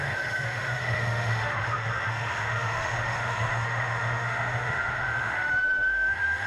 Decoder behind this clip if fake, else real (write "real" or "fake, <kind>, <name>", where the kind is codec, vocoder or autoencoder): fake, autoencoder, DAC-VAE